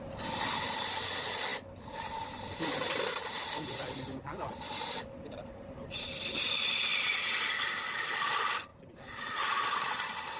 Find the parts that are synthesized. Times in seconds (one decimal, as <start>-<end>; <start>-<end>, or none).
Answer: 1.5-3.0; 6.9-7.4; 8.7-10.4